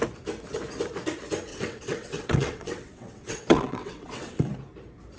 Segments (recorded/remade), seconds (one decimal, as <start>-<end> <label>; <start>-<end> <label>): 0.0-1.5 recorded; 1.5-4.5 remade; 4.5-5.2 recorded